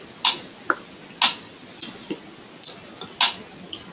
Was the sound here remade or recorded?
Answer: recorded